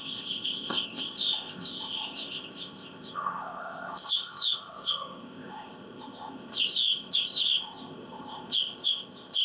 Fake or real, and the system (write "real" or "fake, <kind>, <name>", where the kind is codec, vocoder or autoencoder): fake, codec, ZipCodec